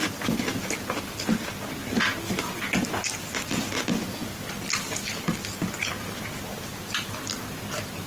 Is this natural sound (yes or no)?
yes